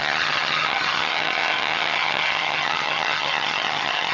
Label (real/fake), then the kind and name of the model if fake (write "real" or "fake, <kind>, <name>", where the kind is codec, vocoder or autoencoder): fake, vocoder, HiFi-GAN